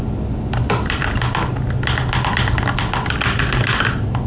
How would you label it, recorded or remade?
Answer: recorded